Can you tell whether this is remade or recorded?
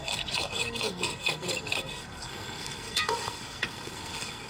remade